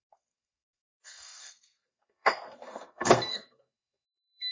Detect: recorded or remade remade